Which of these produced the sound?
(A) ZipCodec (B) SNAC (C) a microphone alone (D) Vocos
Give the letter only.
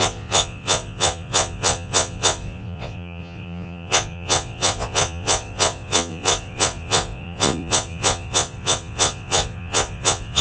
D